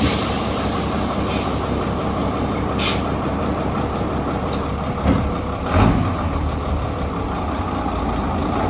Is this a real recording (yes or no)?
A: yes